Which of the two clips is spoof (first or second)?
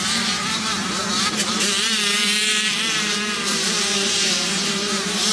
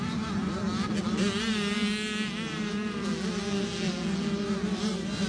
first